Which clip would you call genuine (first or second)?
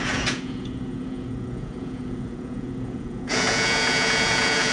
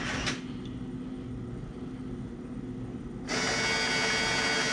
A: second